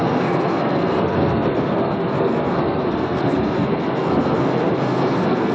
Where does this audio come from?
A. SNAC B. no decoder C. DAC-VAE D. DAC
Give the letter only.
A